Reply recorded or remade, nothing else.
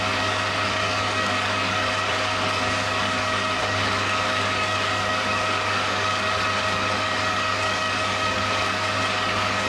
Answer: remade